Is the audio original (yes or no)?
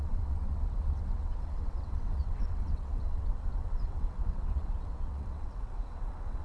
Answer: no